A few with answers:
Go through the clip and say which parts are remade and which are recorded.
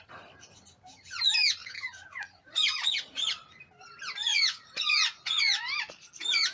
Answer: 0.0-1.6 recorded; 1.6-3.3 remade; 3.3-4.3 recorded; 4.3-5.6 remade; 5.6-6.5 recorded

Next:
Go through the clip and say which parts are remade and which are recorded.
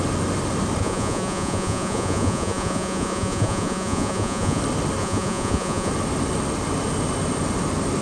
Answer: 0.0-0.8 recorded; 0.8-4.6 remade; 4.6-5.0 recorded; 5.0-5.9 remade; 5.9-8.0 recorded